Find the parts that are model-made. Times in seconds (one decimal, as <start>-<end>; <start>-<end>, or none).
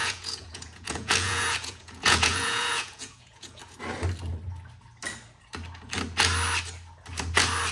0.0-3.6